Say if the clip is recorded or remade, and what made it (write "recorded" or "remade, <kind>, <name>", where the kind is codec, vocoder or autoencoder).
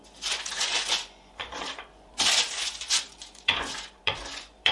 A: remade, vocoder, Vocos